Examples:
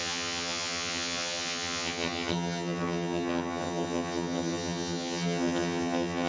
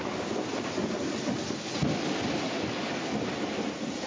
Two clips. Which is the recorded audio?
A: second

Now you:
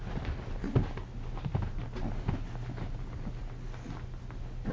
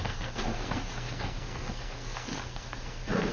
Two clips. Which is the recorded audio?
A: first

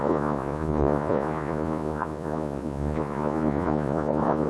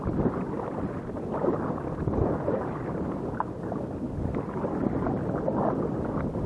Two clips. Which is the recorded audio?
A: second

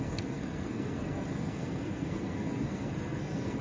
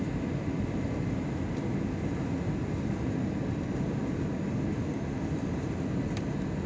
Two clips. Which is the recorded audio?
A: second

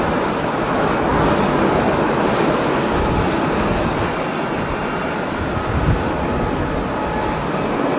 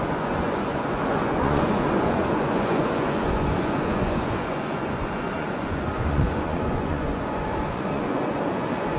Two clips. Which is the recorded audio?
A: first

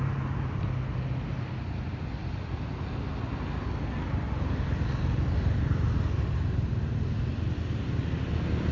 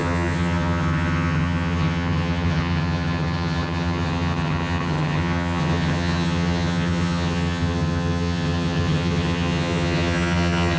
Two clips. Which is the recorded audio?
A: first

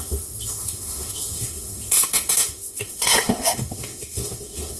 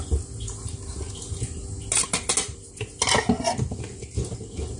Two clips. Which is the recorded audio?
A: second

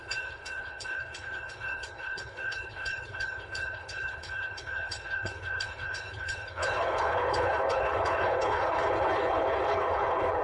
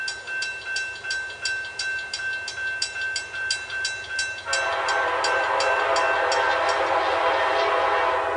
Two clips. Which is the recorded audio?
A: second